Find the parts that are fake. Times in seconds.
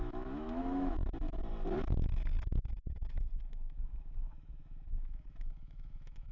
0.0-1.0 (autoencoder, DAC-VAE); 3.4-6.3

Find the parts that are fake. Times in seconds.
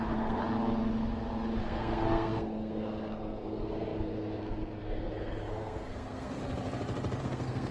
0.0-0.4 (codec, SNAC); 1.6-6.4; 7.2-7.7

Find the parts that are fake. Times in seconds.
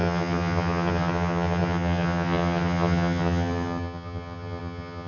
0.0-5.1 (vocoder, HiFi-GAN)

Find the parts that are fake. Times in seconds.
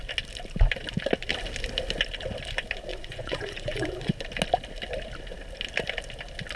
2.9-4.1 (vocoder, Vocos)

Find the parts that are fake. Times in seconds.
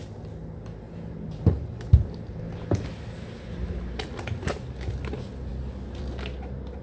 none